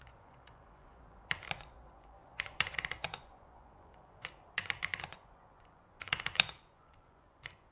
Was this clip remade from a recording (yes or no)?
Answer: yes